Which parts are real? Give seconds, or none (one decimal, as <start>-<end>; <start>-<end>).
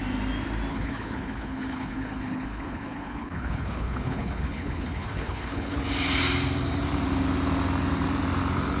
0.0-0.7; 5.8-8.8